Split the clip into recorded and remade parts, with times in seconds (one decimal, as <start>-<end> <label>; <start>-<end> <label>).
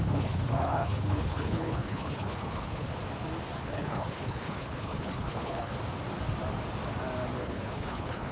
0.0-2.9 remade; 2.9-3.6 recorded; 3.6-5.7 remade; 5.7-7.4 recorded; 7.4-8.3 remade